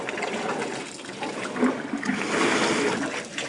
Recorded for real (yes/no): yes